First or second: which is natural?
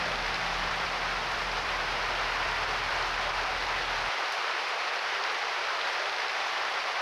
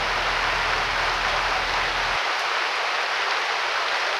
second